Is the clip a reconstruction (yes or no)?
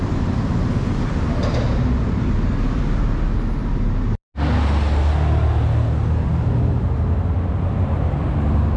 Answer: no